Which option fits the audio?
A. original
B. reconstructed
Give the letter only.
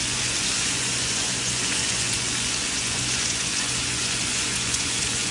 B